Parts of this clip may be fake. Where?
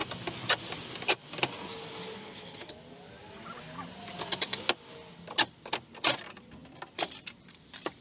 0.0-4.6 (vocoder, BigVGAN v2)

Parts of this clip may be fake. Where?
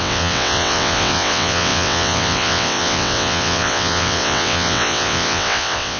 0.0-6.0 (vocoder, WaveNeXt)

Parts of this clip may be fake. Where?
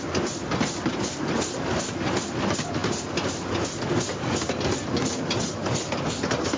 none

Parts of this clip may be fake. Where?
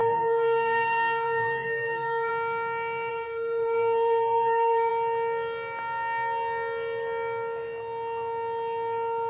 0.0-2.3 (codec, SNAC); 3.1-4.9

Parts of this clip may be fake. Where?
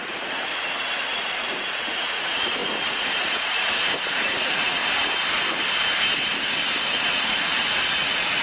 0.0-4.8 (vocoder, Vocos); 6.9-8.4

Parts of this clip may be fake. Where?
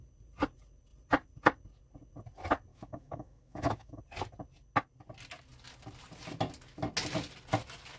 2.7-4.0 (autoencoder, DAC-VAE)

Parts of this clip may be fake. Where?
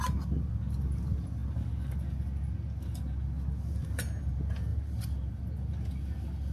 4.7-5.4 (vocoder, BigVGAN v2)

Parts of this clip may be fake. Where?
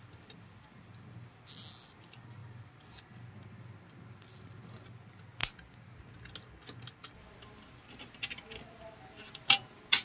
2.4-3.3 (vocoder, BigVGAN v2)